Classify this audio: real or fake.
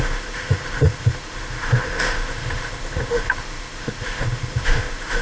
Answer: fake